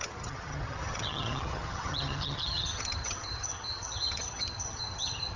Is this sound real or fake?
fake